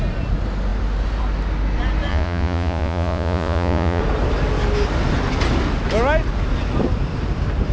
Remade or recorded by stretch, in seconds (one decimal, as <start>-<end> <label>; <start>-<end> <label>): 0.0-2.1 recorded; 2.1-4.0 remade; 4.0-7.7 recorded